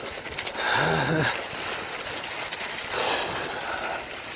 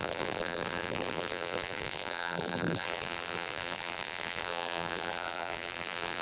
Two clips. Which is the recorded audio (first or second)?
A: first